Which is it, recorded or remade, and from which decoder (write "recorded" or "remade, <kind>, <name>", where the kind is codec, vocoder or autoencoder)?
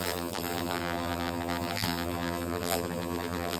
remade, vocoder, BigVGAN v2